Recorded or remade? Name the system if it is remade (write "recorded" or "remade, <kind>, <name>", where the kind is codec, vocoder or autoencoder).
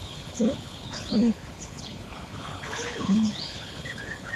remade, codec, HILCodec